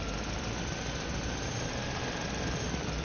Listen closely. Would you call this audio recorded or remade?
recorded